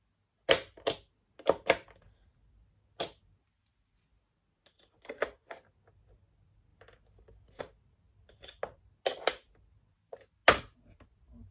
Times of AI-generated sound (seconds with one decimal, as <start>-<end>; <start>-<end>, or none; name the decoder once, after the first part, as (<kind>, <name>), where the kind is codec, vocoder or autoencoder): none